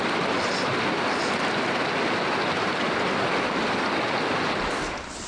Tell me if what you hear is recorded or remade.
recorded